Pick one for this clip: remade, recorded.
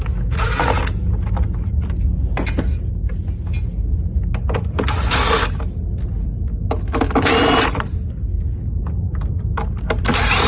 recorded